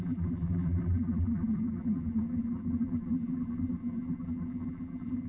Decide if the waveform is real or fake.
fake